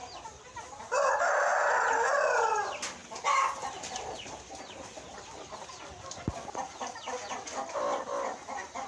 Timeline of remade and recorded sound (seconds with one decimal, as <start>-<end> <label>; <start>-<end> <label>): 0.0-8.9 recorded